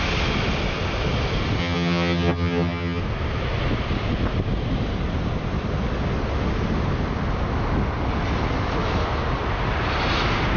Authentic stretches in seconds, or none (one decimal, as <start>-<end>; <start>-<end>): 0.0-1.6; 3.0-10.6